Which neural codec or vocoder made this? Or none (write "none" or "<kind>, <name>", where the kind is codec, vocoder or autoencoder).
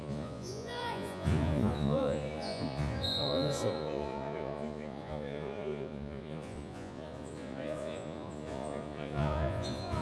vocoder, Vocos